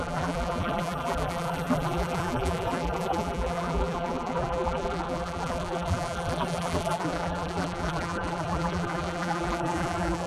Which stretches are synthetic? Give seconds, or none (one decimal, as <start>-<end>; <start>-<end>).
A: 0.0-10.3